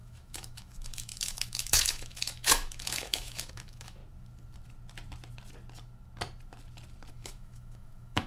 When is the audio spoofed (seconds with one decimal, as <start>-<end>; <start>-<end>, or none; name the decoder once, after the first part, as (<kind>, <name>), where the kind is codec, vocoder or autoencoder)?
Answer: 0.0-4.0 (autoencoder, DAC-VAE); 7.1-8.3